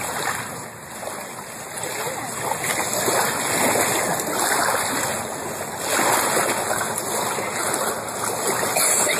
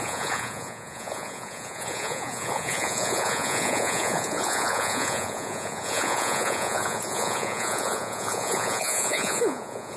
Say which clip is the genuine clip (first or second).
first